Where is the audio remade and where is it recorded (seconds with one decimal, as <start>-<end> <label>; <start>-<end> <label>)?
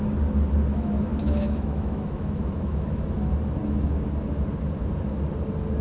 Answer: 0.0-0.7 recorded; 0.7-3.1 remade; 3.1-5.8 recorded